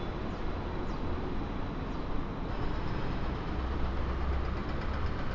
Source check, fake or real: real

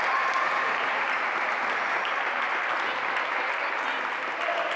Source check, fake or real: real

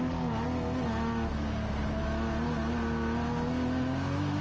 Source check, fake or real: real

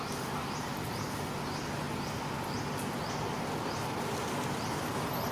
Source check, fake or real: real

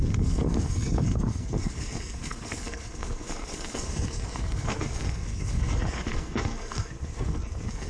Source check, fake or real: fake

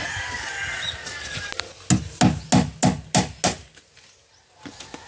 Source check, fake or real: real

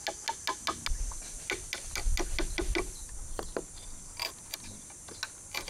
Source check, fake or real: real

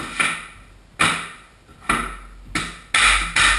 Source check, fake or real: real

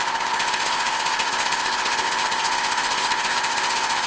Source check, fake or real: fake